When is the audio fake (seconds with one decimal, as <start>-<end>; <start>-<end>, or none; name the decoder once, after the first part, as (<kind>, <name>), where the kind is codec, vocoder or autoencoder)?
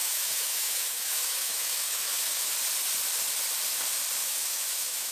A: 0.0-2.5 (autoencoder, DAC-VAE); 4.2-5.1